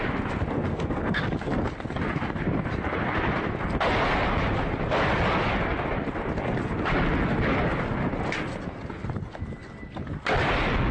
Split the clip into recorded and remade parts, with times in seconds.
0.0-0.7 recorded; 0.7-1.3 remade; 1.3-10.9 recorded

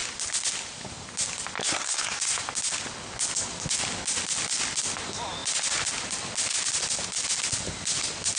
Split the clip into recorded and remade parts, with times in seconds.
0.0-1.6 recorded; 1.6-2.4 remade; 2.4-8.4 recorded

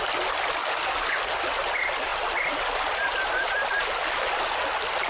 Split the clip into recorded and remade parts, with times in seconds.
0.0-0.6 recorded; 0.6-1.2 remade; 1.2-5.1 recorded

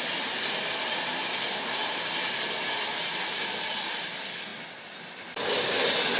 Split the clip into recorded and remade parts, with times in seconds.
0.0-6.2 recorded

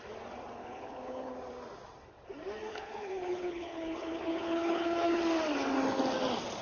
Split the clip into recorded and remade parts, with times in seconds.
0.0-0.6 recorded; 0.6-1.3 remade; 1.3-2.7 recorded; 2.7-5.2 remade; 5.2-6.6 recorded

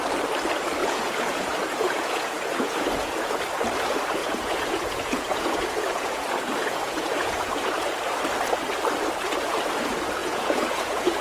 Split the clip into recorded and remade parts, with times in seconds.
0.0-0.8 recorded; 0.8-3.3 remade; 3.3-4.2 recorded; 4.2-7.9 remade; 7.9-10.2 recorded; 10.2-11.2 remade